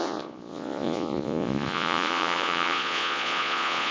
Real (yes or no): no